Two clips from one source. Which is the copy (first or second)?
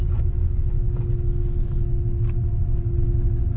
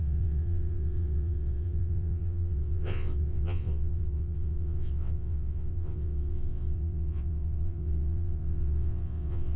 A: second